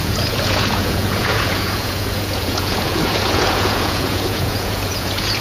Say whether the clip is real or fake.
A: fake